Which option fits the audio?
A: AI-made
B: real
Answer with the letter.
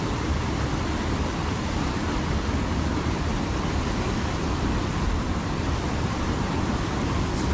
B